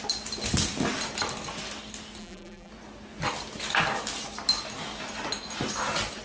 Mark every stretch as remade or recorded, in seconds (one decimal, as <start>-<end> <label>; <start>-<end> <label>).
0.0-2.2 recorded; 2.2-2.7 remade; 2.7-6.2 recorded